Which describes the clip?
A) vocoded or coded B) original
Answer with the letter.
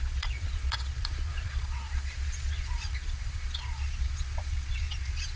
A